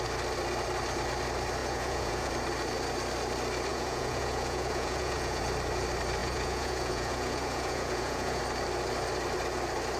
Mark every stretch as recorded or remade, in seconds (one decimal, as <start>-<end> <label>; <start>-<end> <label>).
0.0-1.6 recorded; 1.6-2.3 remade; 2.3-3.7 recorded; 3.7-5.4 remade; 5.4-6.2 recorded; 6.2-8.4 remade; 8.4-10.0 recorded